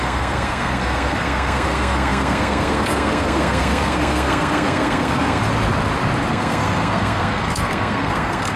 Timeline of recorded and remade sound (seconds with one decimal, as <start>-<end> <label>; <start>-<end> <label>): 0.0-5.4 remade; 5.4-6.3 recorded; 6.3-8.6 remade